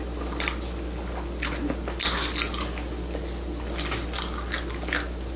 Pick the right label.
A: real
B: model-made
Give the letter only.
A